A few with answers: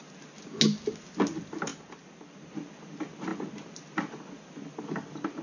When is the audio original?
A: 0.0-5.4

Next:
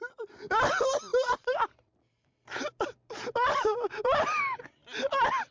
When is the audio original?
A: 0.0-1.1; 4.4-5.5

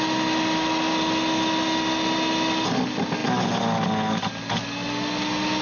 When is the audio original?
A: 0.0-5.6